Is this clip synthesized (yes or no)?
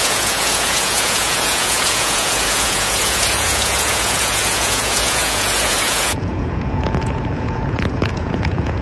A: yes